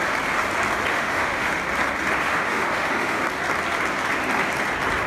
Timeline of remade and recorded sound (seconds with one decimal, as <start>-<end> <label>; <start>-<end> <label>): 0.0-0.9 recorded; 0.9-1.6 remade; 1.6-2.2 recorded; 2.2-3.2 remade; 3.2-5.1 recorded